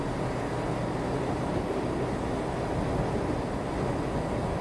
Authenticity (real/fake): real